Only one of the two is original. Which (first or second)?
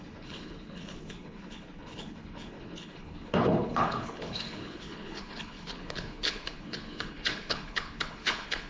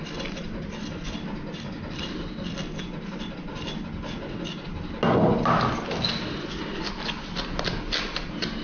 second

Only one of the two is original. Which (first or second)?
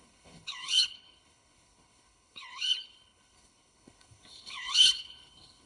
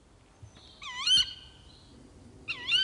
second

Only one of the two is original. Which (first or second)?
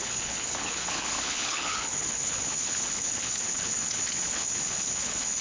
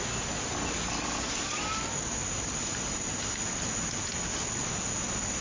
second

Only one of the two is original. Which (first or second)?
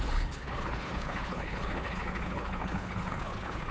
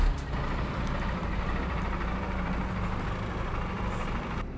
second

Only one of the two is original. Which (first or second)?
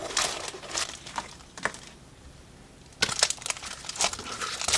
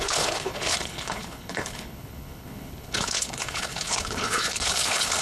first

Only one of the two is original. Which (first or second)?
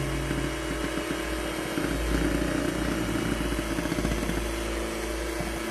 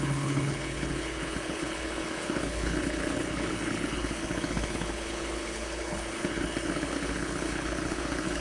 first